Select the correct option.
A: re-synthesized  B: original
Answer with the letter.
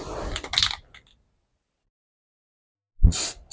B